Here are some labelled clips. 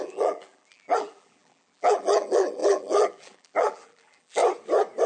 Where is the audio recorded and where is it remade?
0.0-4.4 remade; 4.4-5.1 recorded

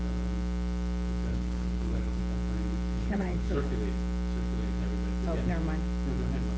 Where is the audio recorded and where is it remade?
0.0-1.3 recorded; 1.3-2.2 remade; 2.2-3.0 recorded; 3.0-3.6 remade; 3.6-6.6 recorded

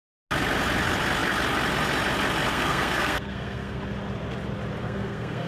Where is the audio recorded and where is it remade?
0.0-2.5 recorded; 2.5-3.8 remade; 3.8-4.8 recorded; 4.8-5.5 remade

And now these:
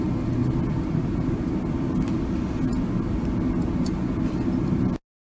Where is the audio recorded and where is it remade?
0.0-5.2 recorded

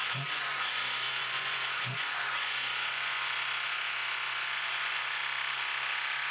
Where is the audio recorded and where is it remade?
0.0-5.2 remade; 5.2-6.3 recorded

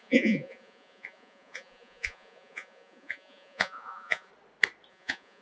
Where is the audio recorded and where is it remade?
0.0-4.3 remade; 4.3-4.9 recorded; 4.9-5.4 remade

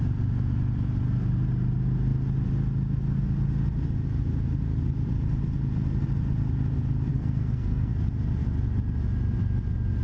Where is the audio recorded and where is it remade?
0.0-7.1 recorded; 7.1-7.9 remade; 7.9-10.0 recorded